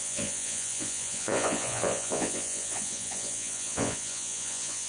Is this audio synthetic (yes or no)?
yes